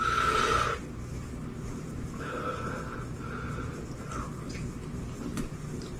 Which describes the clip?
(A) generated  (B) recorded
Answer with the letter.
B